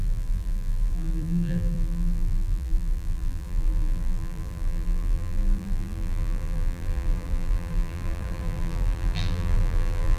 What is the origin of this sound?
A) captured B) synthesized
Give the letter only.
B